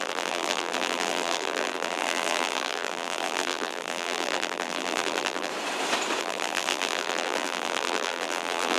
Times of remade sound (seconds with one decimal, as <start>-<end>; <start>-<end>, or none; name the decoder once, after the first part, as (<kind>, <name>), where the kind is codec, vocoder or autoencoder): 0.0-5.5 (vocoder, BigVGAN v2); 6.2-8.8